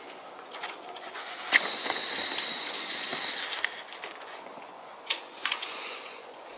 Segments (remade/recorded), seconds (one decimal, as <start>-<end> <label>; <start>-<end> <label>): 0.0-2.0 remade; 2.0-2.6 recorded; 2.6-3.1 remade; 3.1-4.2 recorded; 4.2-6.6 remade